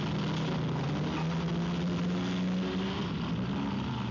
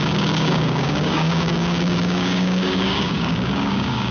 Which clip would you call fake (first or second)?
second